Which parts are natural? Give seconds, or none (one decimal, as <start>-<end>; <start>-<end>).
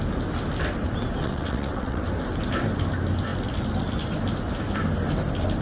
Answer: 0.0-1.2; 2.1-5.6